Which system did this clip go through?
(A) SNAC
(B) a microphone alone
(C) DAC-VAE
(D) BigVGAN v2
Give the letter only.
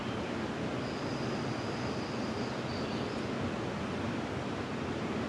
B